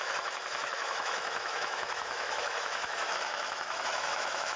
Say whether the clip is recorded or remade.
remade